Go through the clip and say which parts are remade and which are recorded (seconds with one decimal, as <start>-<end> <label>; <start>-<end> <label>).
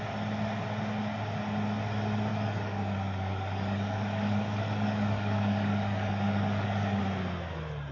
0.0-2.3 recorded; 2.3-7.0 remade; 7.0-7.9 recorded